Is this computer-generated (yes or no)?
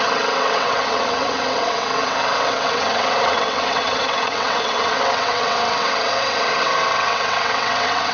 yes